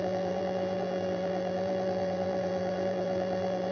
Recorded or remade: remade